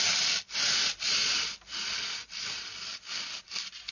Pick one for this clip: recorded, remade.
recorded